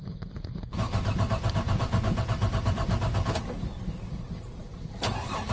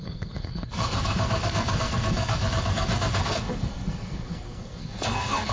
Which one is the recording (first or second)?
first